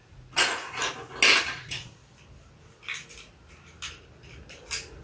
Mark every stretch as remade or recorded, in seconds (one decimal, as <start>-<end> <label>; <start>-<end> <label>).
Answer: 0.0-0.8 remade; 0.8-1.4 recorded; 1.4-2.0 remade; 2.0-5.0 recorded

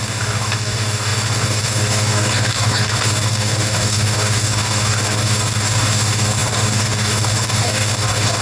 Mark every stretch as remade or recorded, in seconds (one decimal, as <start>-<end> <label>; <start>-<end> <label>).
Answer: 0.0-8.4 remade

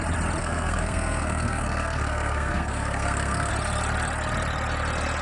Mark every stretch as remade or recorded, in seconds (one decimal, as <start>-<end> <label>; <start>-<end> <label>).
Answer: 0.0-0.4 recorded; 0.4-3.5 remade; 3.5-5.2 recorded

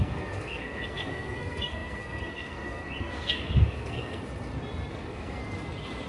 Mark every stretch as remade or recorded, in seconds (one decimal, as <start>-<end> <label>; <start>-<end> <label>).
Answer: 0.0-4.2 remade; 4.2-4.9 recorded; 4.9-5.4 remade; 5.4-6.1 recorded